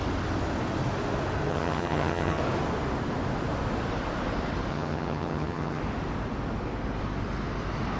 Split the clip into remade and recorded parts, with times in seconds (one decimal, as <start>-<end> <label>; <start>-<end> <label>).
0.0-1.5 recorded; 1.5-2.4 remade; 2.4-4.7 recorded; 4.7-5.8 remade; 5.8-8.0 recorded